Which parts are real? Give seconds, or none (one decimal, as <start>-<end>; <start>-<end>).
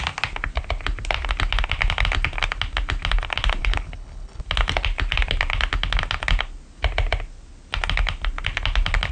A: 0.0-3.6; 4.4-9.1